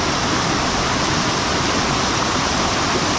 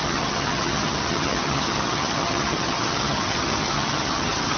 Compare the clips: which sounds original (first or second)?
first